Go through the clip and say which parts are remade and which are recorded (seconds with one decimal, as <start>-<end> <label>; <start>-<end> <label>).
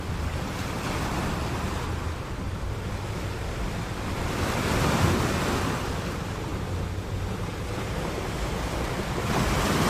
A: 0.0-9.9 recorded